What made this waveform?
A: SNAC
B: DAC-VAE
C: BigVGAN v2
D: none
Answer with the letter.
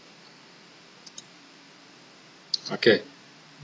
D